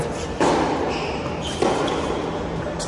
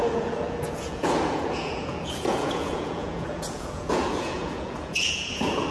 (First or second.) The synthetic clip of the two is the second